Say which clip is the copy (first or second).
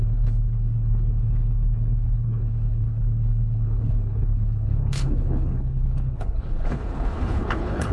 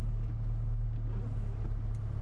first